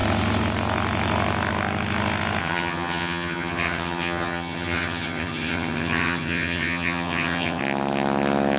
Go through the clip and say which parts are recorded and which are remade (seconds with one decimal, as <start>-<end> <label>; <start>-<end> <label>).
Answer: 0.0-2.4 recorded; 2.4-7.6 remade; 7.6-8.6 recorded